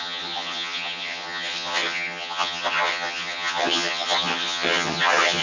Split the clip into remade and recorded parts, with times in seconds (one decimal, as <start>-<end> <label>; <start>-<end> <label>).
0.0-5.4 remade